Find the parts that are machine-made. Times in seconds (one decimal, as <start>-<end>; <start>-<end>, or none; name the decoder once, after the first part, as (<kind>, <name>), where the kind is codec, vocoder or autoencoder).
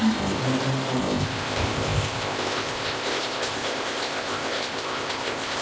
0.0-0.4 (codec, ZipCodec); 1.0-5.6